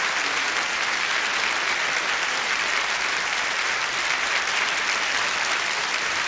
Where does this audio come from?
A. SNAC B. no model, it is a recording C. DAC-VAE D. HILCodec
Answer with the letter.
B